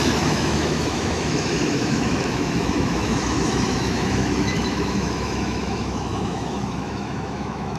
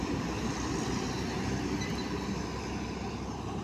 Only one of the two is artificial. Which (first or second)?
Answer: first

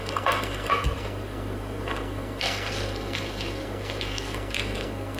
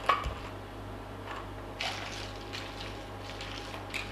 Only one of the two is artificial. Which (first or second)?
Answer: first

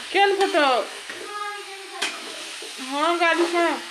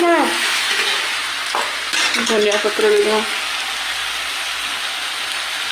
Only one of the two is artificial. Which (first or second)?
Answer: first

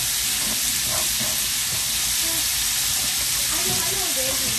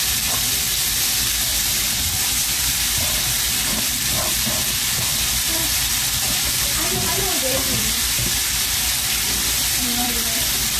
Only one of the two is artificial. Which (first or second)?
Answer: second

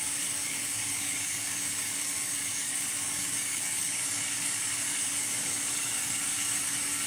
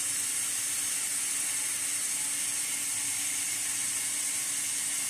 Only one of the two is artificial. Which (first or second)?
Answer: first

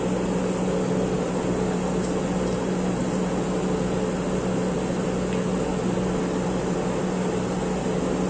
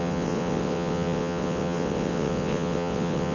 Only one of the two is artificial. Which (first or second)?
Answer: second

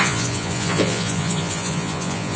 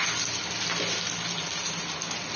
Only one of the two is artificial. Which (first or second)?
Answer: first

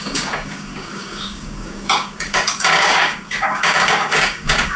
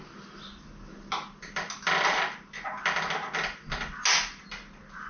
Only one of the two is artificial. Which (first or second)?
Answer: first